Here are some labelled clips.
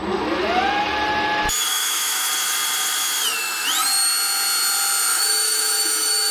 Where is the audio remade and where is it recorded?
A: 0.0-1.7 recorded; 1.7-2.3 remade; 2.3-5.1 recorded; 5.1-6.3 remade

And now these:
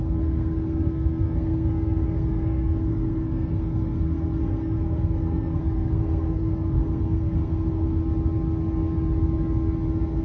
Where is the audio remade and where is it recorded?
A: 0.0-8.0 remade; 8.0-10.2 recorded

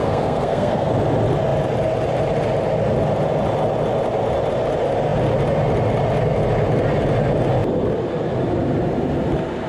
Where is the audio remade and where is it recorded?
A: 0.0-0.9 remade; 0.9-9.7 recorded

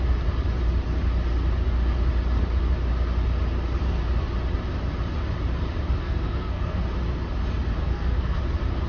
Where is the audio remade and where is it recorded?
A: 0.0-6.0 recorded; 6.0-6.8 remade; 6.8-7.8 recorded; 7.8-8.4 remade; 8.4-8.9 recorded

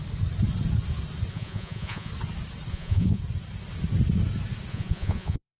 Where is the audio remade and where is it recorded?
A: 0.0-1.3 recorded; 1.3-2.1 remade; 2.1-2.7 recorded; 2.7-3.2 remade; 3.2-4.7 recorded; 4.7-5.6 remade